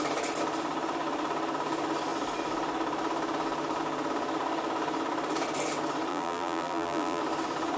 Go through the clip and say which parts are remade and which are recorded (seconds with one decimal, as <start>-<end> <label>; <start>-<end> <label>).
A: 0.0-6.1 recorded; 6.1-7.2 remade; 7.2-7.8 recorded